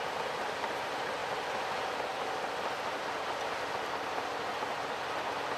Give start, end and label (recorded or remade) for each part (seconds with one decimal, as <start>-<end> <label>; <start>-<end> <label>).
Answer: 0.0-5.6 recorded